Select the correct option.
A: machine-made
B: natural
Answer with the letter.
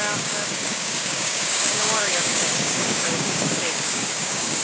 A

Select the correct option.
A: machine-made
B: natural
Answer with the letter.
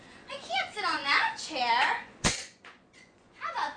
A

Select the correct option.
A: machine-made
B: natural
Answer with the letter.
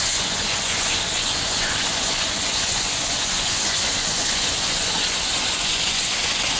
A